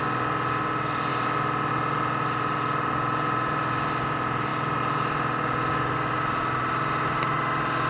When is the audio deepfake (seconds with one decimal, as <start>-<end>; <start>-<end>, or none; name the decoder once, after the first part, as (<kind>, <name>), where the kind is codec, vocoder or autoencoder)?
none